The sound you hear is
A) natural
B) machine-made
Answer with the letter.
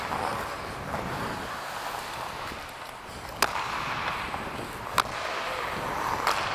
A